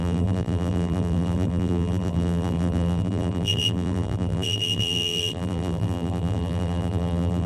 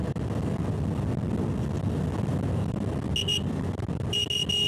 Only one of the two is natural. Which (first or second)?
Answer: second